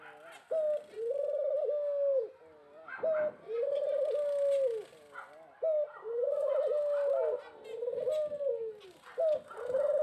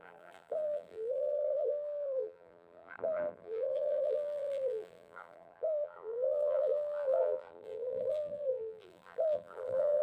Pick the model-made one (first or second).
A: second